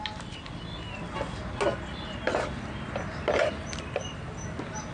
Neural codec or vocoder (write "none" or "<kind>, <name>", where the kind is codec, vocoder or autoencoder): none